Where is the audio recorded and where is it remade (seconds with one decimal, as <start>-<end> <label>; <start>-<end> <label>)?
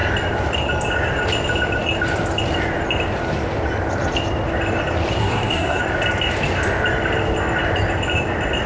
0.0-5.2 recorded; 5.2-5.8 remade; 5.8-8.7 recorded